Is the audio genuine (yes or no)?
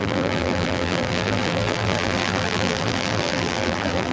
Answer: no